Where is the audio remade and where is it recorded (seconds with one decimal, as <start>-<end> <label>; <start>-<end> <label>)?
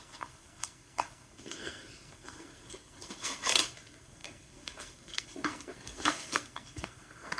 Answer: 0.0-7.4 remade